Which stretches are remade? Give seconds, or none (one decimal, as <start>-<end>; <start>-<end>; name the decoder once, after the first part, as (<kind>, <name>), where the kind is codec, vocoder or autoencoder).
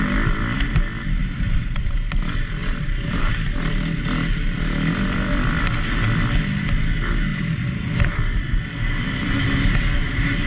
1.2-1.8 (vocoder, BigVGAN v2); 2.6-3.3